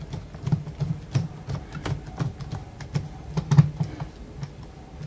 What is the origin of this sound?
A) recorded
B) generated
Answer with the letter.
A